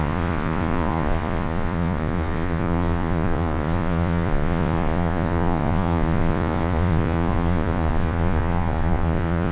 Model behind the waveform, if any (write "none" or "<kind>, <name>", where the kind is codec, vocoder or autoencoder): vocoder, Vocos